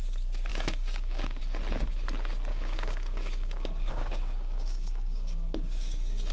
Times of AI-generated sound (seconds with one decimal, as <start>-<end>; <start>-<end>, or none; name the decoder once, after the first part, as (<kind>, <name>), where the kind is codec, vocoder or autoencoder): 0.5-1.4 (codec, DAC); 2.5-6.3